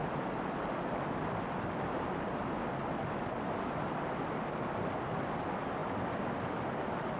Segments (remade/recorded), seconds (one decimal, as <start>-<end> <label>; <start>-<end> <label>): 0.0-0.6 remade; 0.6-7.2 recorded

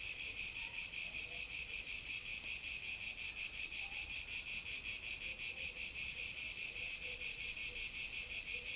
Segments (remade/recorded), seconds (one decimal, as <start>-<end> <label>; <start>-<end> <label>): 0.0-2.2 remade; 2.2-3.4 recorded; 3.4-4.3 remade; 4.3-5.5 recorded; 5.5-7.6 remade; 7.6-8.2 recorded; 8.2-8.8 remade

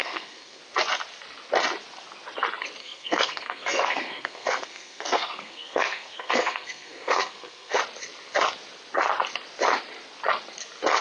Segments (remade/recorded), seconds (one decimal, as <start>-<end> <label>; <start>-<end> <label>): 0.0-0.6 remade; 0.6-2.8 recorded; 2.8-7.8 remade; 7.8-11.0 recorded

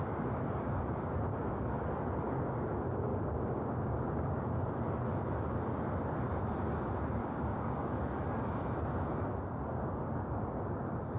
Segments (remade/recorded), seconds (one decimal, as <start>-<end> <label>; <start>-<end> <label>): 0.0-3.1 recorded; 3.1-4.4 remade; 4.4-7.2 recorded; 7.2-8.2 remade; 8.2-11.2 recorded

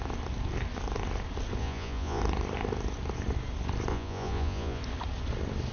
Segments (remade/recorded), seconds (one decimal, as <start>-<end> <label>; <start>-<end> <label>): 0.0-1.6 recorded; 1.6-2.2 remade; 2.2-3.9 recorded; 3.9-4.8 remade; 4.8-5.7 recorded

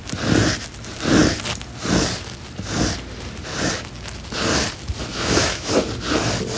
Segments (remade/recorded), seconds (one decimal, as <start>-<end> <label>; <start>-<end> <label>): 0.0-5.1 recorded; 5.1-5.7 remade; 5.7-6.6 recorded

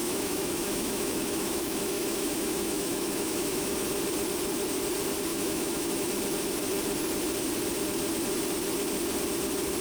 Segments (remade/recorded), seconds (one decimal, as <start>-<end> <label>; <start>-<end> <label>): 0.0-3.8 remade; 3.8-5.3 recorded; 5.3-6.1 remade; 6.1-9.8 recorded